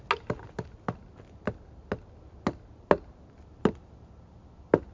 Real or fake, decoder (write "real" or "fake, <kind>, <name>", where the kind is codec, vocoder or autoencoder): real